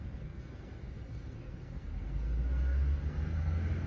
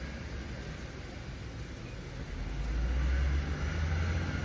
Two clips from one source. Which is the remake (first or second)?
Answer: first